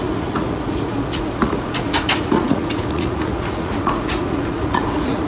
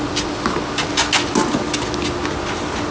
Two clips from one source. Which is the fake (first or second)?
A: first